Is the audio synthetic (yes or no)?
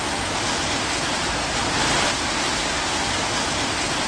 no